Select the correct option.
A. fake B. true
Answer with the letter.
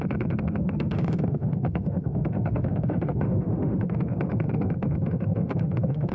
A